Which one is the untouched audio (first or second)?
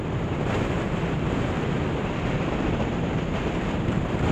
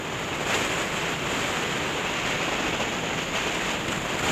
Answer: second